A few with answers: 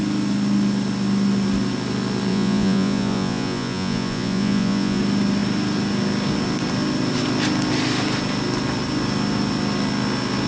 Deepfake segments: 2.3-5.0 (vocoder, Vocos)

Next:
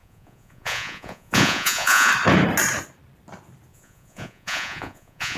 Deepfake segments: 0.0-2.1 (vocoder, Vocos); 3.7-5.4

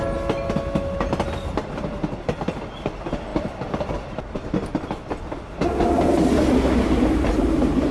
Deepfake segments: none

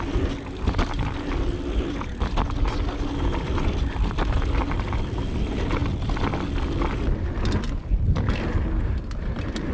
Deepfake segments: none

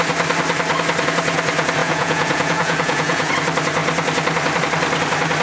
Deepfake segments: 1.8-3.3 (vocoder, Vocos)

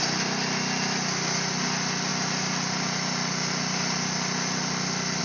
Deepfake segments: none